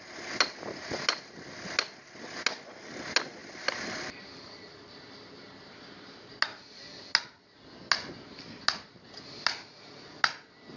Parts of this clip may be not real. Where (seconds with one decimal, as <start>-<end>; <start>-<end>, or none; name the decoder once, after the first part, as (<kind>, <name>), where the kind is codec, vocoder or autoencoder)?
3.4-4.7 (vocoder, BigVGAN v2)